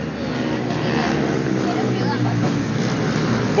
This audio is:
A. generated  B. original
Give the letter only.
B